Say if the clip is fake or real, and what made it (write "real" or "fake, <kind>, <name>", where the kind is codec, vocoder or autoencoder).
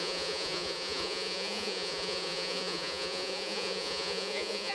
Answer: fake, vocoder, Vocos